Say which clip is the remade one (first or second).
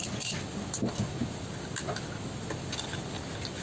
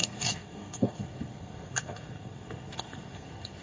second